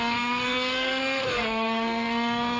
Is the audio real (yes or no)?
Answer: no